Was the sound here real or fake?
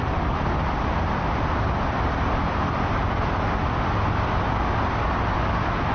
real